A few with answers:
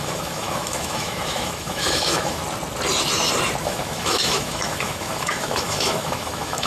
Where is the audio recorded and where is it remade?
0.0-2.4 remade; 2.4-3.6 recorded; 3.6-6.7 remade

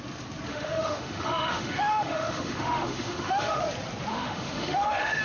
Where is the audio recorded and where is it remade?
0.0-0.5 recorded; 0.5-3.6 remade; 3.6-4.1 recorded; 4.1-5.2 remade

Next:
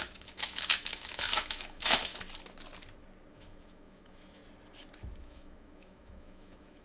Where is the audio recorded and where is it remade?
0.0-2.1 remade; 2.1-3.3 recorded; 3.3-4.4 remade; 4.4-5.2 recorded; 5.2-6.8 remade

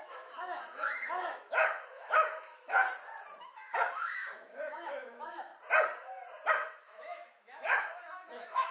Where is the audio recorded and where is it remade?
0.0-2.8 remade; 2.8-3.4 recorded; 3.4-5.5 remade; 5.5-6.5 recorded; 6.5-8.7 remade

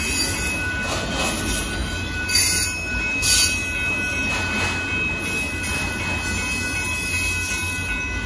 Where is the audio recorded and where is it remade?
0.0-8.3 recorded

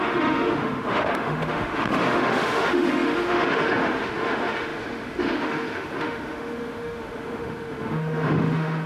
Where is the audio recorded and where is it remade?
0.0-8.9 remade